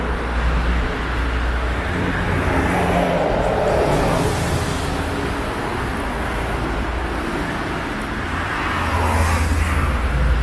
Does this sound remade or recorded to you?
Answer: recorded